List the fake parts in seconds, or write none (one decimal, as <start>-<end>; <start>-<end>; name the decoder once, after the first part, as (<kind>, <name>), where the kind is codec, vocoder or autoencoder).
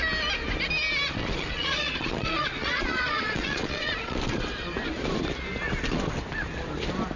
1.2-4.2 (vocoder, Vocos)